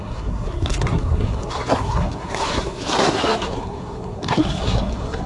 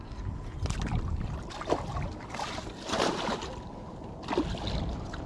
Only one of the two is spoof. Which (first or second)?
first